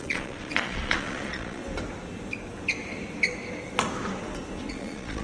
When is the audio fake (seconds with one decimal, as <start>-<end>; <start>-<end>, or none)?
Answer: 0.0-1.6; 4.7-5.2